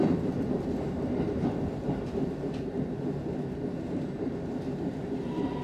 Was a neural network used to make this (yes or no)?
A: yes